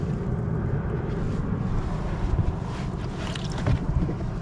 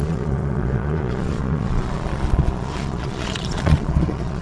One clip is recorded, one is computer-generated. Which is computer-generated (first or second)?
second